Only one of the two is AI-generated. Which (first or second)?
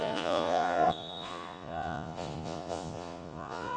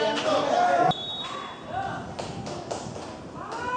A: first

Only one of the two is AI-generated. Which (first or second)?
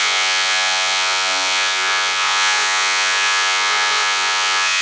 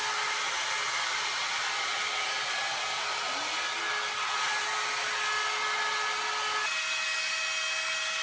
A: first